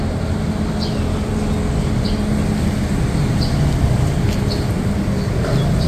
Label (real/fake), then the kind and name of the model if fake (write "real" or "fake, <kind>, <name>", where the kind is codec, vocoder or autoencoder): real